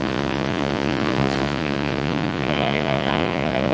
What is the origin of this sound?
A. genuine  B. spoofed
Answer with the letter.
B